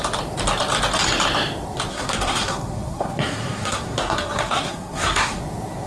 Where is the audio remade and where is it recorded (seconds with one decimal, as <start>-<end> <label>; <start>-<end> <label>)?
0.0-1.9 recorded; 1.9-5.4 remade; 5.4-5.9 recorded